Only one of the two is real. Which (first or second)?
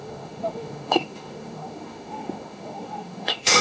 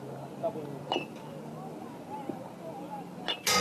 second